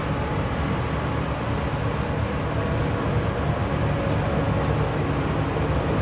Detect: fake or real real